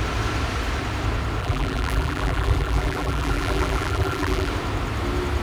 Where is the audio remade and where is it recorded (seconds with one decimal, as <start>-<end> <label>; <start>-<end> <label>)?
0.0-1.4 recorded; 1.4-4.5 remade; 4.5-5.4 recorded